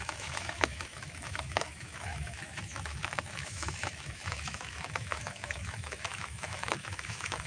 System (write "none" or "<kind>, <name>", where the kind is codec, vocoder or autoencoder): autoencoder, DAC-VAE